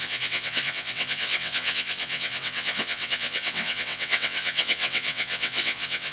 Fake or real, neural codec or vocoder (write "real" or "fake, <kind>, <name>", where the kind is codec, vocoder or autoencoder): fake, vocoder, WaveNeXt